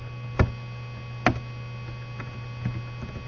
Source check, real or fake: real